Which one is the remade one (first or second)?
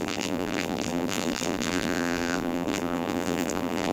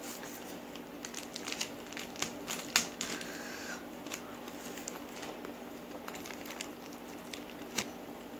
first